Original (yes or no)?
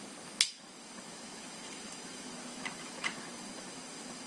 no